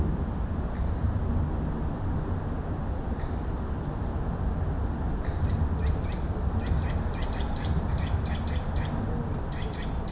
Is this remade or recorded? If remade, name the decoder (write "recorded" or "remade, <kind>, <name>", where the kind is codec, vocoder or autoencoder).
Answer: recorded